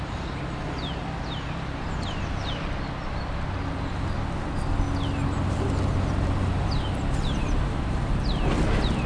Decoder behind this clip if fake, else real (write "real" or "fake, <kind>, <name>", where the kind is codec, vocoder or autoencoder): real